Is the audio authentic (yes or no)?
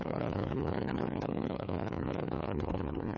no